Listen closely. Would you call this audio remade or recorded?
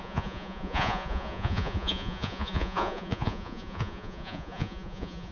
remade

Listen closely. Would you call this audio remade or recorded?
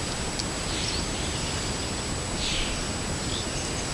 recorded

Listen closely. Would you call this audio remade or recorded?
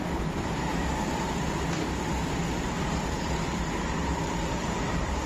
remade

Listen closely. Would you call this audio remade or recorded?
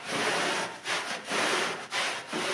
recorded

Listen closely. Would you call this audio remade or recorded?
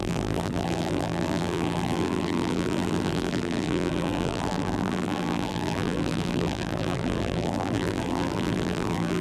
remade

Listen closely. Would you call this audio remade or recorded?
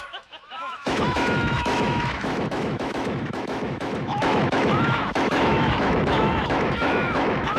remade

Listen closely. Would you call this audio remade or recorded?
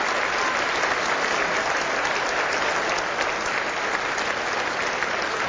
recorded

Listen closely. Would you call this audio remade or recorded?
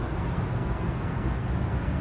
remade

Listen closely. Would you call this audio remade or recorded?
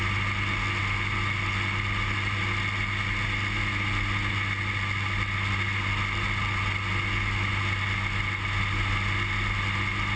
recorded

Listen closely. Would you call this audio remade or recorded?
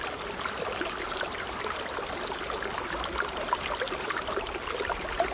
recorded